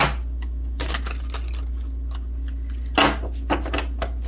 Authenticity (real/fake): real